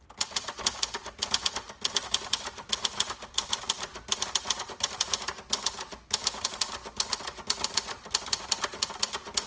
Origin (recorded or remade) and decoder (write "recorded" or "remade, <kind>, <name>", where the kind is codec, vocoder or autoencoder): recorded